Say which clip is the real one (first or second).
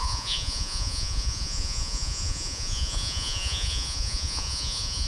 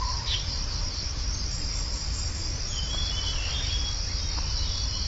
second